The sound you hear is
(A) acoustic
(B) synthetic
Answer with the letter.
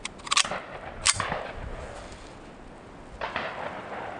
A